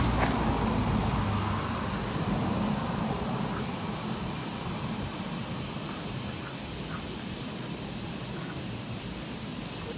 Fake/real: real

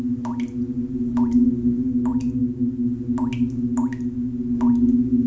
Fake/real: real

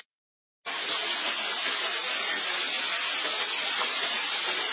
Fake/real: real